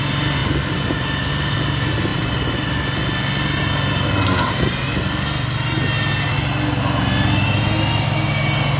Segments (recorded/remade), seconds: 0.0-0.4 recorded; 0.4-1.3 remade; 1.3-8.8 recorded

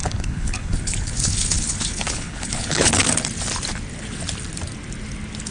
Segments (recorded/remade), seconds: 0.0-2.9 remade; 2.9-5.5 recorded

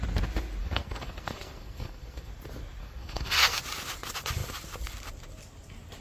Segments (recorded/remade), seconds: 0.0-0.6 recorded; 0.6-2.3 remade; 2.3-2.8 recorded; 2.8-3.6 remade; 3.6-6.0 recorded

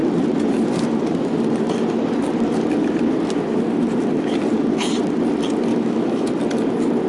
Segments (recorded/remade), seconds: 0.0-5.7 recorded; 5.7-6.3 remade; 6.3-7.1 recorded

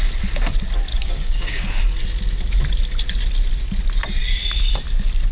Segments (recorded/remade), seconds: 0.0-0.9 recorded; 0.9-1.8 remade; 1.8-5.3 recorded